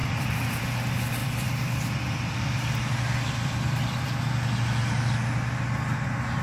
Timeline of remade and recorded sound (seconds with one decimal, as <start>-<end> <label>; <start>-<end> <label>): 0.0-0.6 remade; 0.6-1.2 recorded; 1.2-4.1 remade; 4.1-6.4 recorded